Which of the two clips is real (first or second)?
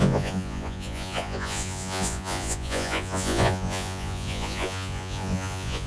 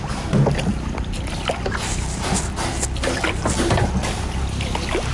second